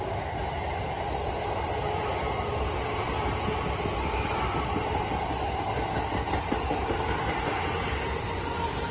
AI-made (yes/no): no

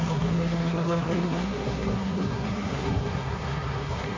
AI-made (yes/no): yes